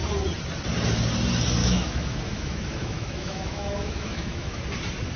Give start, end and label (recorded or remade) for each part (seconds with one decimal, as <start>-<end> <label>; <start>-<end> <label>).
0.0-1.6 recorded; 1.6-4.6 remade; 4.6-5.2 recorded